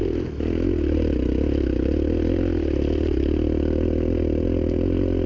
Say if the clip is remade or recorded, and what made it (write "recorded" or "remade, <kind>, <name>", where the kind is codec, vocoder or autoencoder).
recorded